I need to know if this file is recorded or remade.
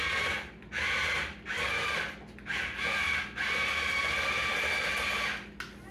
recorded